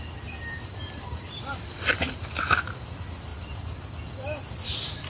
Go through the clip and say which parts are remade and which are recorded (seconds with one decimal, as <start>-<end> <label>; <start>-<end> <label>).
0.0-5.1 recorded